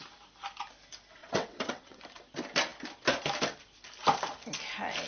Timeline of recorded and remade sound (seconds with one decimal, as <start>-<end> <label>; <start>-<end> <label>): 0.0-1.2 recorded; 1.2-2.0 remade; 2.0-5.1 recorded